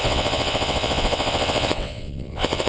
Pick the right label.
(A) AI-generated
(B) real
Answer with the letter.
A